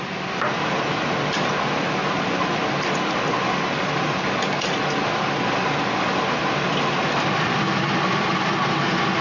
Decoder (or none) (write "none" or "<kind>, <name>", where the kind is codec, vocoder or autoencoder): none